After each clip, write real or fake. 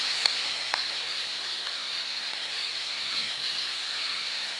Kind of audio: fake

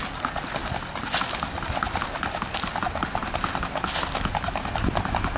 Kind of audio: real